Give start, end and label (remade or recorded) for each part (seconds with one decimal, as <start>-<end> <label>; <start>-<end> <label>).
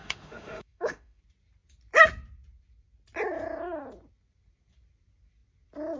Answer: 0.0-1.2 remade; 1.2-6.0 recorded